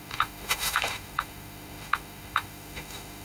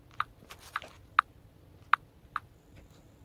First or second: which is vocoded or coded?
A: first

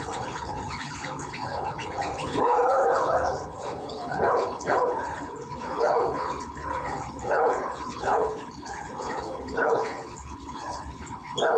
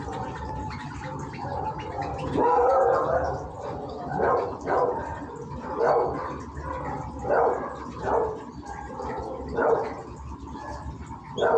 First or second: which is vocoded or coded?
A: first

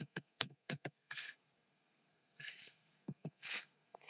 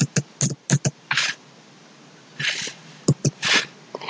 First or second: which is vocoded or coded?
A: first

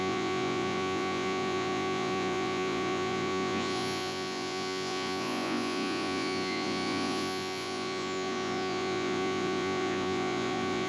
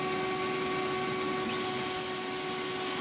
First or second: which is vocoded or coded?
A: first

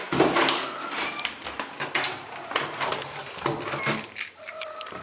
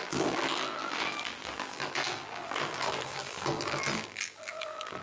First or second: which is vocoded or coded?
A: second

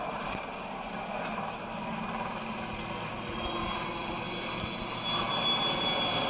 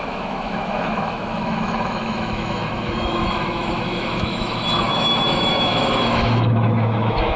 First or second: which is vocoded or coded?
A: second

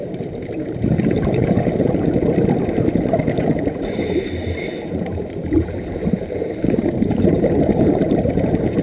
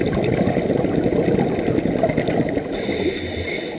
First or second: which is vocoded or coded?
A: first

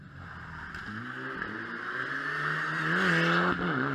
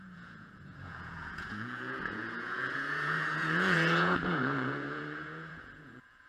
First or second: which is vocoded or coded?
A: second